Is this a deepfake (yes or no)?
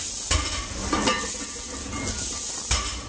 no